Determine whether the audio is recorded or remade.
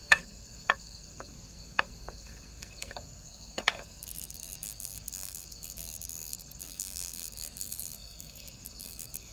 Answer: remade